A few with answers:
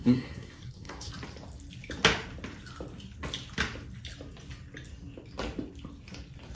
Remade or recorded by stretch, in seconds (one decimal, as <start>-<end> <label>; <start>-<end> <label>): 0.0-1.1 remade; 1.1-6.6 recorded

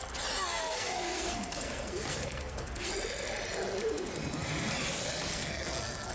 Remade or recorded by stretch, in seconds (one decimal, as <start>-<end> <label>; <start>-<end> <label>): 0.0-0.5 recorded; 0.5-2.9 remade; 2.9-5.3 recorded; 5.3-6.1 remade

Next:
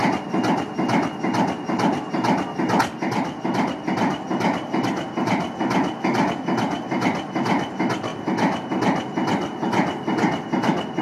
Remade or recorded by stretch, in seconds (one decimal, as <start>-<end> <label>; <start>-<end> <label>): 0.0-11.0 recorded